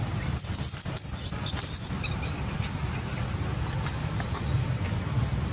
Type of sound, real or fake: real